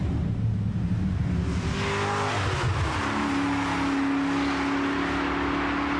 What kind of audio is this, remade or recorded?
recorded